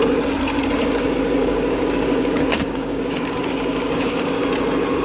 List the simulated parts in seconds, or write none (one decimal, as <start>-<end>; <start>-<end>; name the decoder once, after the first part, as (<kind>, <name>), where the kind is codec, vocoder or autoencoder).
1.4-4.4 (codec, DAC)